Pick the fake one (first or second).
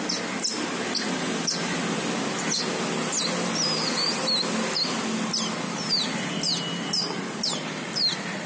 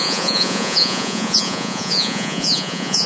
second